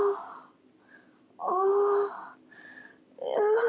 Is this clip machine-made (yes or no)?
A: no